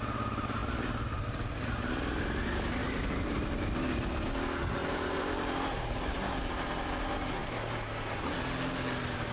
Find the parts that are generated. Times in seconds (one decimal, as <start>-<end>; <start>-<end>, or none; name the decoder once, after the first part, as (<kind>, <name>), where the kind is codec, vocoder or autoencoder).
2.8-3.8 (vocoder, BigVGAN v2); 4.8-5.5